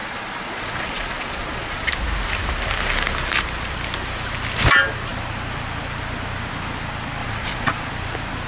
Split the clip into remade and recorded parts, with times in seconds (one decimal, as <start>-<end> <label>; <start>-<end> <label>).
0.0-1.9 remade; 1.9-7.2 recorded; 7.2-7.9 remade; 7.9-8.5 recorded